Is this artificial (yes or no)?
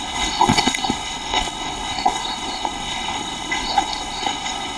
yes